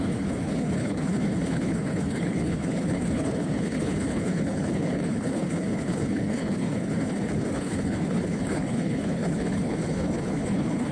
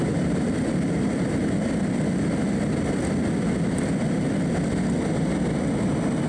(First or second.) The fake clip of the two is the first